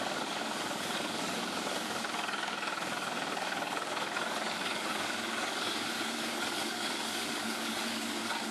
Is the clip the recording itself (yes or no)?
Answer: no